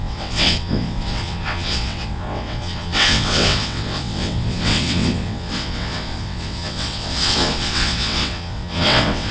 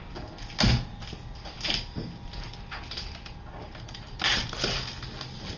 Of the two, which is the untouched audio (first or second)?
second